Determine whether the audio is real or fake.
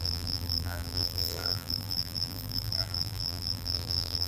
fake